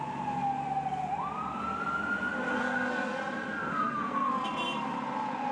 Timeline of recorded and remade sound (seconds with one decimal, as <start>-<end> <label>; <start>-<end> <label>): 0.0-2.5 recorded; 2.5-3.2 remade; 3.2-3.6 recorded; 3.6-4.3 remade; 4.3-5.5 recorded

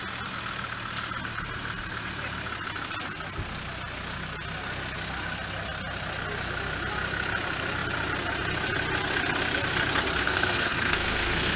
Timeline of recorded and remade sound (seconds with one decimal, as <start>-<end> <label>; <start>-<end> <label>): 0.0-10.2 recorded; 10.2-11.6 remade

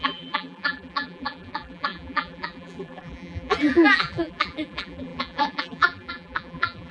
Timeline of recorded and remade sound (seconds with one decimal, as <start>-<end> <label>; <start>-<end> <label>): 0.0-6.9 remade

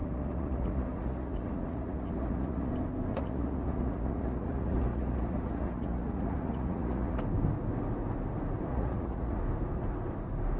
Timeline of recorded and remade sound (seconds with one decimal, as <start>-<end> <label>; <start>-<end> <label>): 0.0-2.7 remade; 2.7-3.1 recorded; 3.1-7.2 remade; 7.2-8.7 recorded; 8.7-9.4 remade; 9.4-10.6 recorded

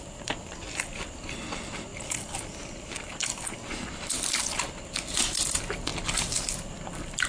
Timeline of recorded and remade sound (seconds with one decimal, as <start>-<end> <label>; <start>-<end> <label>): 0.0-7.3 remade

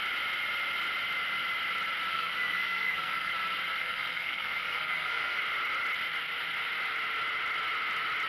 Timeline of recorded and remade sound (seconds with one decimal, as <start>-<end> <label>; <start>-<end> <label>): 0.0-2.1 recorded; 2.1-3.3 remade; 3.3-3.8 recorded; 3.8-5.4 remade; 5.4-8.3 recorded

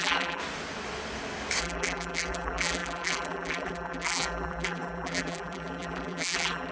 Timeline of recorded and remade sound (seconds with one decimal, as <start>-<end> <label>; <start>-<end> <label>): 0.0-0.4 remade; 0.4-1.6 recorded; 1.6-6.7 remade